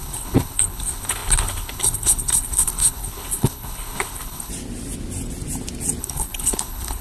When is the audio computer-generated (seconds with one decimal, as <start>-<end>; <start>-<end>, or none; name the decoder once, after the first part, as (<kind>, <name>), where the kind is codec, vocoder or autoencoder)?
0.0-4.5 (codec, HILCodec); 6.0-7.0